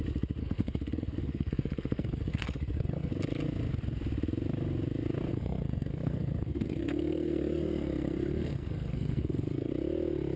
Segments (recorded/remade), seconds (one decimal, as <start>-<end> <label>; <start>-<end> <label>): 0.0-0.4 recorded; 0.4-3.1 remade; 3.1-5.3 recorded; 5.3-9.7 remade; 9.7-10.4 recorded